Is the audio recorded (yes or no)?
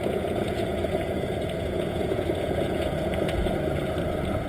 no